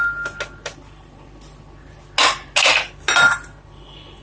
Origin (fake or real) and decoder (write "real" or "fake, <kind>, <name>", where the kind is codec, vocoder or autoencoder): real